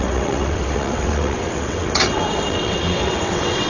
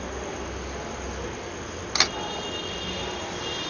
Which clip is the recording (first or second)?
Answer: second